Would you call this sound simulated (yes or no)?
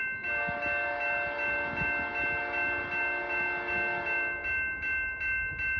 no